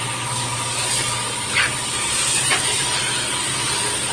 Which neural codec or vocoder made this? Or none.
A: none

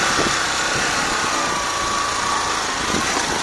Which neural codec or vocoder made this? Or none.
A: none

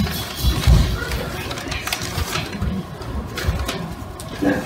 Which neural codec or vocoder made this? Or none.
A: none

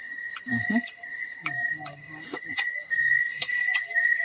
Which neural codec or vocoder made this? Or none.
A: codec, DAC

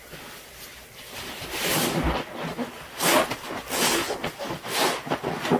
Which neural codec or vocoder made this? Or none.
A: none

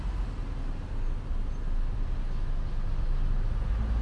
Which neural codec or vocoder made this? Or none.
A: none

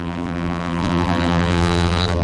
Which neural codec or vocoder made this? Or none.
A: vocoder, BigVGAN v2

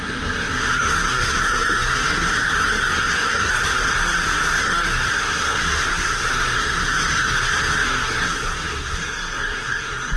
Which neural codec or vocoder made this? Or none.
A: codec, SNAC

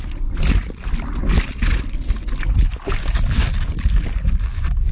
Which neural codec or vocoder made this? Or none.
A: none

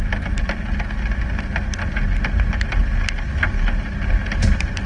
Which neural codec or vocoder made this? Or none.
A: none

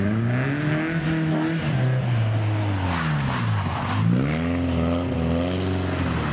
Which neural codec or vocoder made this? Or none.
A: none